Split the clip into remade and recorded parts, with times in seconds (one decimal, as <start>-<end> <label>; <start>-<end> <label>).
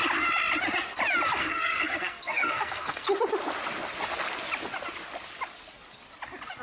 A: 0.0-1.4 recorded; 1.4-3.1 remade; 3.1-6.6 recorded